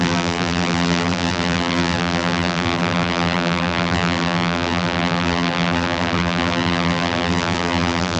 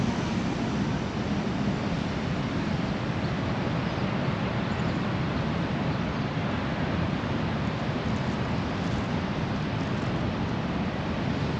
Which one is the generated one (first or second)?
first